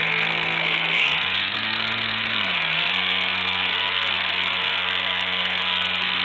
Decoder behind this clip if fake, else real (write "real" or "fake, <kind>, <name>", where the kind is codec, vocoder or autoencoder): fake, codec, SNAC